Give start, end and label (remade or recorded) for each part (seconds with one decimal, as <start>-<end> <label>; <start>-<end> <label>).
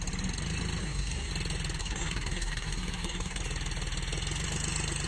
0.0-0.8 recorded; 0.8-1.3 remade; 1.3-1.8 recorded; 1.8-3.4 remade; 3.4-5.1 recorded